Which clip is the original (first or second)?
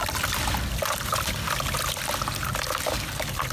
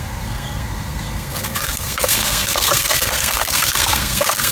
first